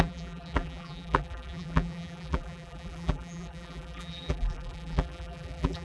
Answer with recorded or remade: remade